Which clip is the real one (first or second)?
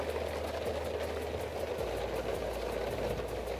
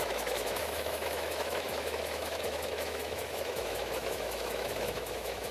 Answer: first